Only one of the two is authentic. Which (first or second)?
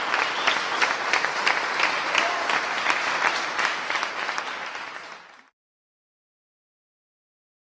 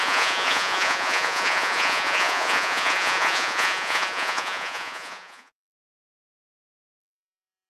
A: first